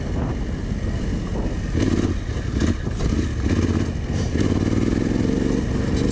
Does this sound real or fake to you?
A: real